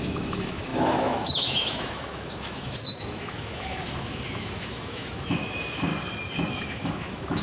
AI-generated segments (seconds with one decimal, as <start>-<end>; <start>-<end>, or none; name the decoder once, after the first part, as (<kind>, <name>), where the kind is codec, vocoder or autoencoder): 0.0-5.9 (autoencoder, DAC-VAE); 6.5-7.4